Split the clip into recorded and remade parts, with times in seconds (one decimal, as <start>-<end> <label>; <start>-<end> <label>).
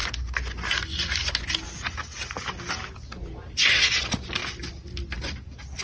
0.0-5.8 recorded